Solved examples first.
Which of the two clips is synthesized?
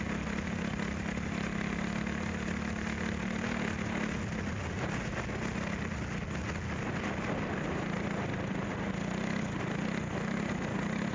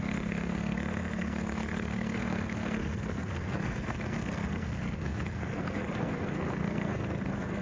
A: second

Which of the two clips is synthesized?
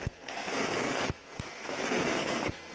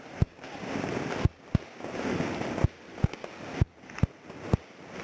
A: first